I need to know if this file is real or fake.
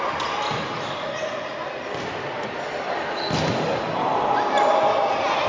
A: real